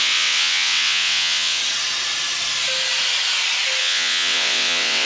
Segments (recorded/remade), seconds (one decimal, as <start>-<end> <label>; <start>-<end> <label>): 0.0-1.6 remade; 1.6-3.8 recorded; 3.8-5.1 remade